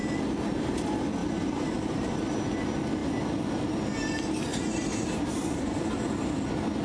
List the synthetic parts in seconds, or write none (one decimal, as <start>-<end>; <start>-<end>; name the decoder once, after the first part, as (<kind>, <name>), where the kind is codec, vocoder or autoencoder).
1.2-2.2 (vocoder, BigVGAN v2); 4.5-5.9